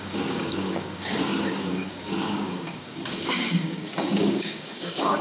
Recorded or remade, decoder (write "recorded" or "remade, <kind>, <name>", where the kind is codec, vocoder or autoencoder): remade, codec, DAC